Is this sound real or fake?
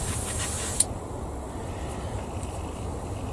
real